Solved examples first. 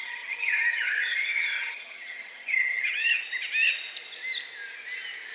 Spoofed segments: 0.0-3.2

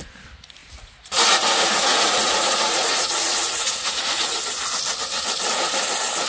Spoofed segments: 0.6-4.4

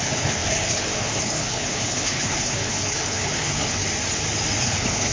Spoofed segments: 0.0-3.8; 4.6-5.1

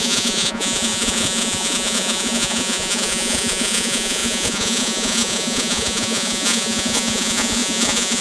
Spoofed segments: 0.0-8.2

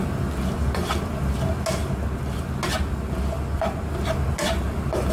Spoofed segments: none

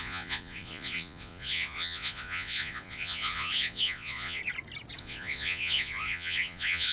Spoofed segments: 0.0-4.4; 5.0-6.9